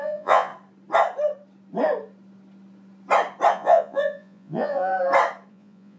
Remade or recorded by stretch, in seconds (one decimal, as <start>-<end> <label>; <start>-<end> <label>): 0.0-0.5 remade; 0.5-3.5 recorded; 3.5-4.9 remade; 4.9-5.5 recorded; 5.5-6.0 remade